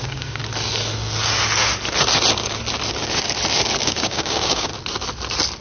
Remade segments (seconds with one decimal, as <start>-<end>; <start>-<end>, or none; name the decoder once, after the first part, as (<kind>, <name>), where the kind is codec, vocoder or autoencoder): 0.0-0.4 (codec, DAC); 3.8-4.7